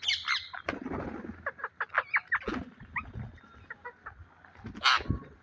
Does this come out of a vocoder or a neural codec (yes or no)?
no